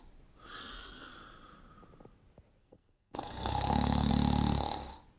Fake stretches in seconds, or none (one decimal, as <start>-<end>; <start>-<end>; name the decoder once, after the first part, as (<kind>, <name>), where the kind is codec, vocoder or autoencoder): 0.6-1.1 (codec, SNAC); 2.6-4.1

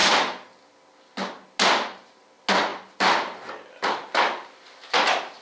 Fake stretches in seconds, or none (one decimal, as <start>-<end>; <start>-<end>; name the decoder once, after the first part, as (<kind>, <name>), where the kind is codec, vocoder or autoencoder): none

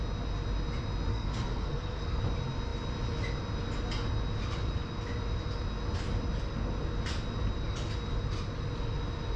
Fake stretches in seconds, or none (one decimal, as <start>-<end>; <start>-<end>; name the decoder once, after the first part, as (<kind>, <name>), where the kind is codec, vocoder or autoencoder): 1.1-2.2 (codec, SNAC)

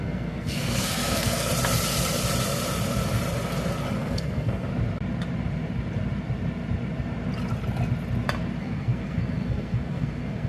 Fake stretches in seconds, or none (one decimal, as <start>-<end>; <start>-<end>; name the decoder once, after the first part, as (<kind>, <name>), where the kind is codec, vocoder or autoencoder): 0.0-1.5 (codec, SNAC); 4.0-4.7; 8.6-10.5

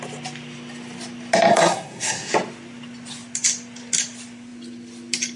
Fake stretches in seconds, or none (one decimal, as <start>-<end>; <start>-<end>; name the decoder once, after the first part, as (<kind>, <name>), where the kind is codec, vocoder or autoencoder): 1.5-2.3 (codec, SNAC)

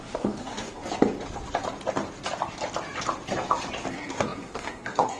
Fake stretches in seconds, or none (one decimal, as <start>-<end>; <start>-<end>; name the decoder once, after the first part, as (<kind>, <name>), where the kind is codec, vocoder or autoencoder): 0.0-0.8 (codec, SNAC); 3.9-5.2

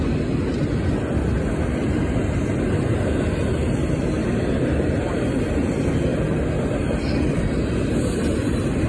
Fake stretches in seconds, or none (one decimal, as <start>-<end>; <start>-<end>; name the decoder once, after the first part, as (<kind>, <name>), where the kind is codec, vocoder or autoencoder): none